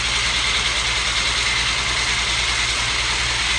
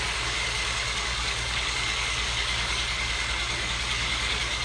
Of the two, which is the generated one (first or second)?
second